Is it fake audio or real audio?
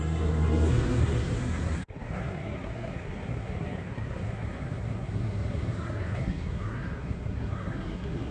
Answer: fake